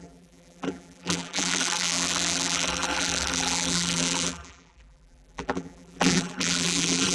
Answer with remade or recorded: remade